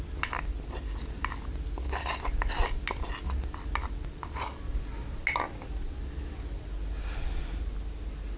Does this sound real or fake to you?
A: real